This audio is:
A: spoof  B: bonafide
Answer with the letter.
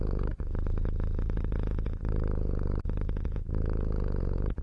B